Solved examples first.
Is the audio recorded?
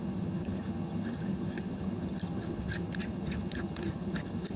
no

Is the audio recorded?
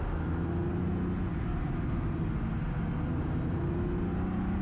yes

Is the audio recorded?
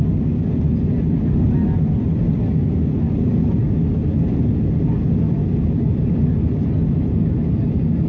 yes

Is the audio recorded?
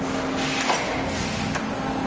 yes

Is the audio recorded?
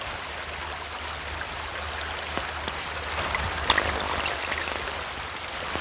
yes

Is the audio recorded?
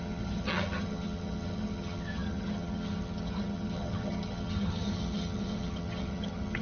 no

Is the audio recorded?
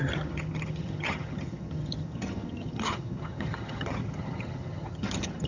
no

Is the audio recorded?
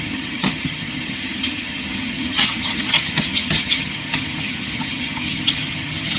no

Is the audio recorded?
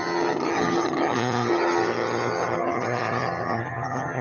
no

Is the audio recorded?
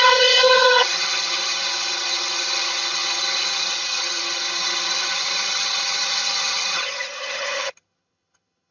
no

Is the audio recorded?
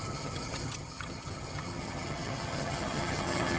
no